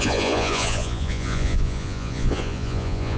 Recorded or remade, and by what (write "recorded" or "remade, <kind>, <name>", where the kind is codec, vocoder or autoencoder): remade, vocoder, Vocos